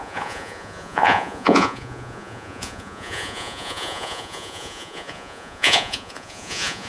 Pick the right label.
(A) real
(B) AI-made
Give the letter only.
B